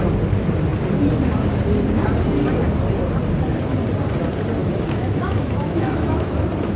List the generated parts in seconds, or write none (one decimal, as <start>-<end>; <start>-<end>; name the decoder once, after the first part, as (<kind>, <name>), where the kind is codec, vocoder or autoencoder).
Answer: 4.6-6.3 (autoencoder, DAC-VAE)